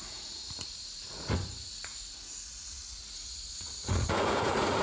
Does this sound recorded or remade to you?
remade